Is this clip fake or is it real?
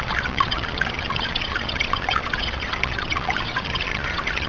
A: fake